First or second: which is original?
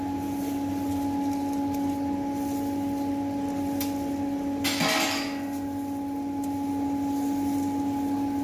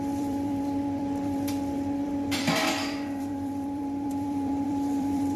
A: first